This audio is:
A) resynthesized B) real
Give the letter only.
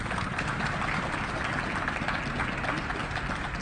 B